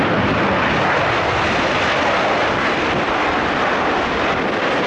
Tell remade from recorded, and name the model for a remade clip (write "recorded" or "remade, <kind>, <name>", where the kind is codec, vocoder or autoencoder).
recorded